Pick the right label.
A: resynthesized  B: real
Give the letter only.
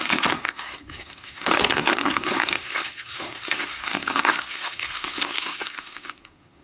A